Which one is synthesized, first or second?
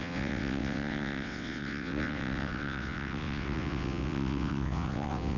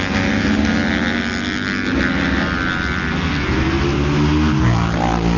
first